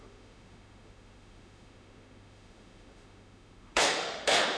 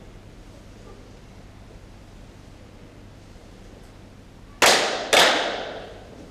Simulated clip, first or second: first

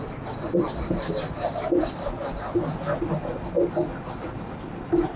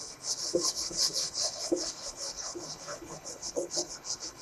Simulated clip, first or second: second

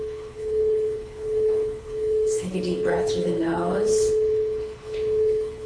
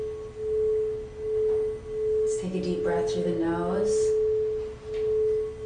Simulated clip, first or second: first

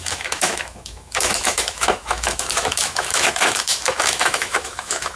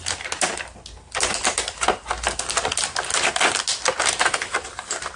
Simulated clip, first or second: first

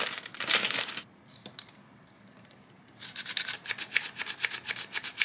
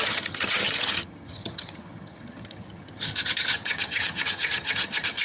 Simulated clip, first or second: second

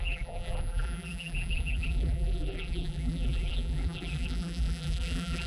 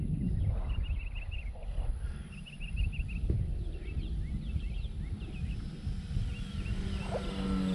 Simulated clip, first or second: first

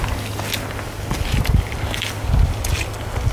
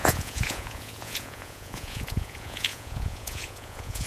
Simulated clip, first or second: second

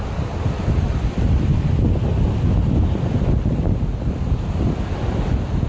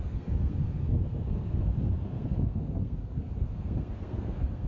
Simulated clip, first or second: second